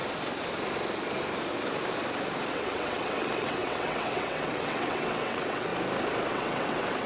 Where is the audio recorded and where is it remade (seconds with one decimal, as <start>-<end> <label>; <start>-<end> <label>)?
0.0-2.5 recorded; 2.5-5.7 remade; 5.7-6.3 recorded; 6.3-7.1 remade